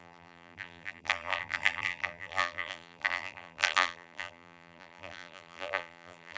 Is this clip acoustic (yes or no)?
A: no